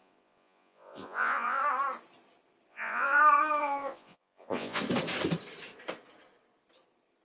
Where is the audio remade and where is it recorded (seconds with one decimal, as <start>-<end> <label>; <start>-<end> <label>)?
0.0-1.6 remade; 1.6-2.7 recorded; 2.7-3.2 remade; 3.2-3.6 recorded; 3.6-4.8 remade; 4.8-7.2 recorded